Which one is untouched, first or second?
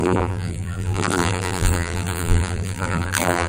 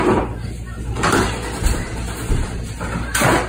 second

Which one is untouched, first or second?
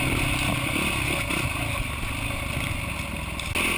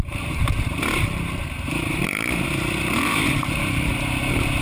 first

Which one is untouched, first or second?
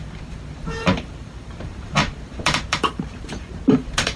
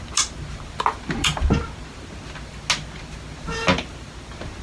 second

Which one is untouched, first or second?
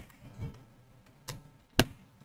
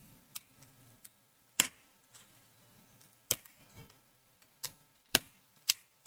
first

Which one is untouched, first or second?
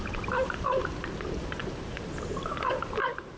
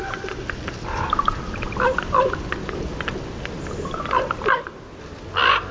second